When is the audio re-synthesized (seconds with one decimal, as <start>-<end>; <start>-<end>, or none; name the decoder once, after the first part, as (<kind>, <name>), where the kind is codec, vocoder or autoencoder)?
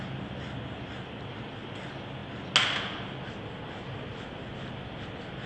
none